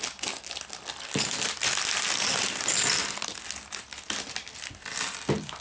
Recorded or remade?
recorded